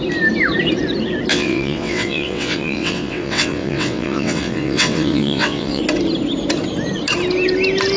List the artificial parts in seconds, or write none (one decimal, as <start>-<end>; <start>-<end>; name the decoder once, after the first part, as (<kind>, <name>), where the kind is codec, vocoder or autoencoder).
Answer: 1.3-5.8 (vocoder, WaveNeXt)